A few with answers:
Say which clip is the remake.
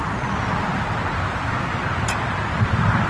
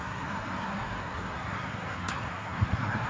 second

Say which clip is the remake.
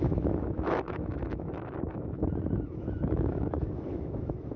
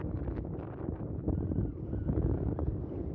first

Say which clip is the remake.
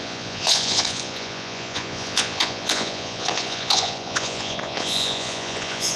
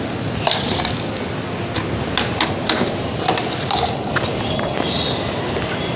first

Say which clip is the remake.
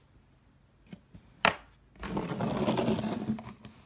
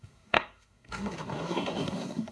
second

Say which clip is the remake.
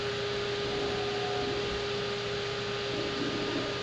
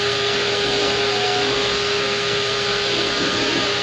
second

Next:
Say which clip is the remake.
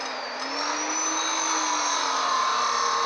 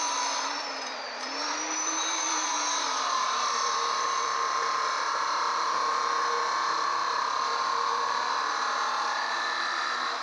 second